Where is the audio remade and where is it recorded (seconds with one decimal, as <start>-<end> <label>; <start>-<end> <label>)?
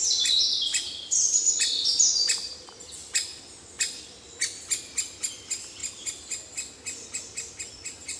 0.0-8.2 recorded